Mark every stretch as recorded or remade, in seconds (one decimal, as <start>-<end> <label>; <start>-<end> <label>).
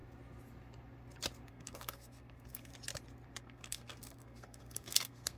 0.0-1.5 recorded; 1.5-2.7 remade; 2.7-3.4 recorded; 3.4-5.4 remade